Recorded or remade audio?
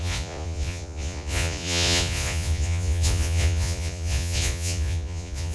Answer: remade